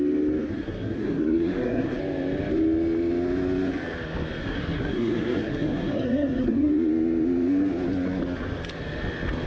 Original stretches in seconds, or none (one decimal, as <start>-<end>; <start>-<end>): 0.0-0.5; 2.0-4.4; 6.7-9.5